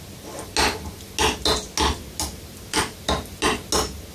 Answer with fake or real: real